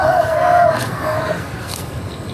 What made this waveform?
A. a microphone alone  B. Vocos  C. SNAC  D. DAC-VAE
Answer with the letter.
C